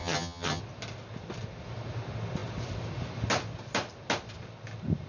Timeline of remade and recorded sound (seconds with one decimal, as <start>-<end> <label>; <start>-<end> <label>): 0.0-0.6 remade; 0.6-5.1 recorded